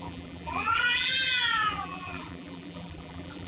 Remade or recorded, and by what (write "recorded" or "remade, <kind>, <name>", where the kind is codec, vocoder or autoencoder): remade, vocoder, BigVGAN v2